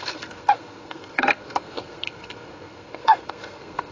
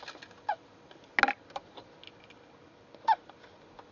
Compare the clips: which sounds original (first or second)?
second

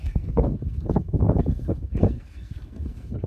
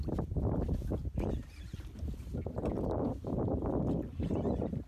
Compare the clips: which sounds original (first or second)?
second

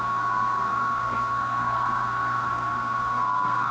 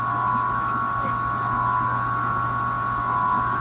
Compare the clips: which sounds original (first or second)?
second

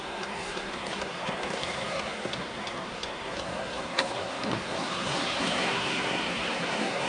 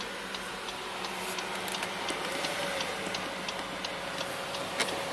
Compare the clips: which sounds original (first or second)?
second